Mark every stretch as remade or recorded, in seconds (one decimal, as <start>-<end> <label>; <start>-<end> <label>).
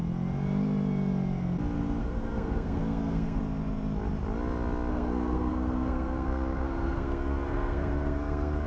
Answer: 0.0-2.0 recorded; 2.0-3.4 remade; 3.4-4.9 recorded; 4.9-8.7 remade